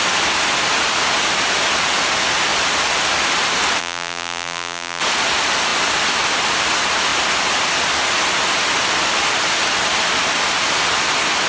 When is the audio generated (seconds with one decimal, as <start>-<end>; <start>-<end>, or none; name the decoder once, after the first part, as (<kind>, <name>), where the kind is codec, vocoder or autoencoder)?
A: 3.8-5.0 (vocoder, BigVGAN v2)